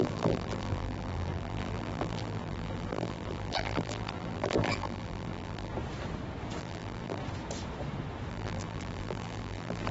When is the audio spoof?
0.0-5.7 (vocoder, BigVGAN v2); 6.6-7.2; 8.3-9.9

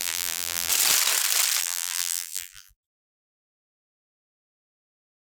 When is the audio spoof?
0.0-0.7 (vocoder, BigVGAN v2); 1.6-4.8

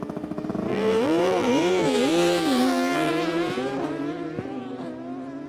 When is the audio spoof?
0.7-3.1 (vocoder, BigVGAN v2)